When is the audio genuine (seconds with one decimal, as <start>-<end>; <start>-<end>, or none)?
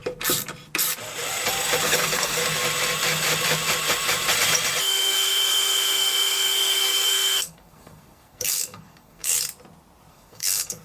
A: 0.0-1.8; 2.4-4.8; 9.3-10.1